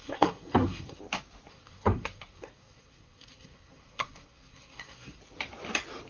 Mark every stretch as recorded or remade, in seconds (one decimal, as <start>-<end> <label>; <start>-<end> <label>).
0.0-1.0 remade; 1.0-1.5 recorded; 1.5-5.2 remade; 5.2-6.1 recorded